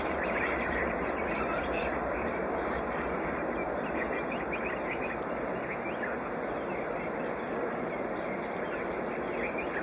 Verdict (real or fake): real